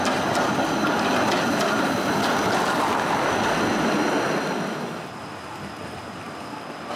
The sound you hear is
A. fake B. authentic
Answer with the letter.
B